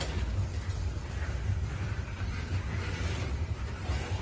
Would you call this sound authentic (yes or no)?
no